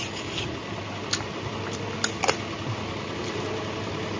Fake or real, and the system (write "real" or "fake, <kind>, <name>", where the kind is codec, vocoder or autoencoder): real